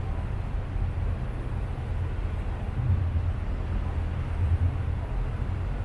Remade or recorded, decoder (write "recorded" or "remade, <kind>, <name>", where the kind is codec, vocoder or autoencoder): recorded